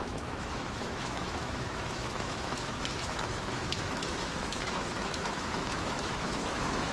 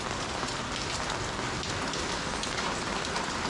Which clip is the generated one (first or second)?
first